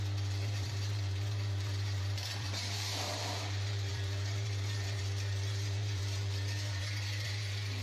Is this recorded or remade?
remade